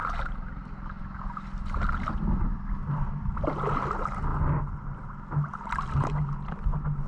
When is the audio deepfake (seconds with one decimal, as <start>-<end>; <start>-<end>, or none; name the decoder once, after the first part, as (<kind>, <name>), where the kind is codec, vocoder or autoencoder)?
0.0-0.7 (vocoder, BigVGAN v2); 2.8-3.4